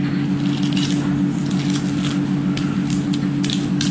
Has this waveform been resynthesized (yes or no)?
no